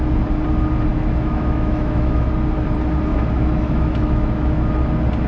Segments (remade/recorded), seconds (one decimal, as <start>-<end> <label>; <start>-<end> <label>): 0.0-0.9 recorded; 0.9-2.3 remade; 2.3-3.1 recorded; 3.1-4.7 remade; 4.7-5.3 recorded